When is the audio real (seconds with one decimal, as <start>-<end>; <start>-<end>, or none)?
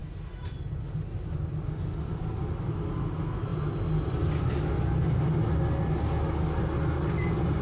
0.0-7.6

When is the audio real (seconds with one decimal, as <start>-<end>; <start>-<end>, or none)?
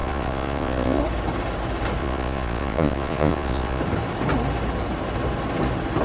1.0-2.0; 3.8-6.0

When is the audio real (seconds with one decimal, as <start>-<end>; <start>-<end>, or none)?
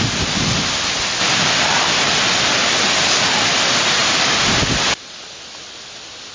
0.0-6.3